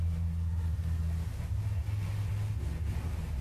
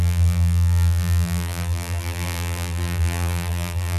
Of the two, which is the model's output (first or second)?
second